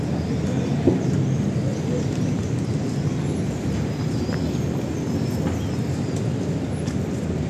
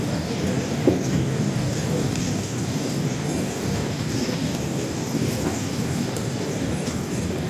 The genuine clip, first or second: first